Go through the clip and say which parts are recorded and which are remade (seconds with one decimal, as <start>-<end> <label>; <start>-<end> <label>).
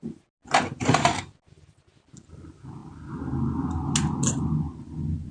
0.0-5.3 recorded